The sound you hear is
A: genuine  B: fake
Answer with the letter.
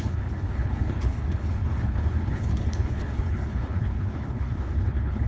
B